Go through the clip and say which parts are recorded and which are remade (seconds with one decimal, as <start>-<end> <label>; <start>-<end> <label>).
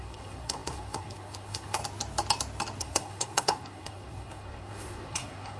0.0-1.8 remade; 1.8-2.8 recorded; 2.8-5.6 remade